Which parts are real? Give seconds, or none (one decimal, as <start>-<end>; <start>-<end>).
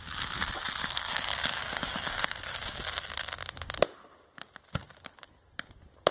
0.0-0.8; 2.7-6.1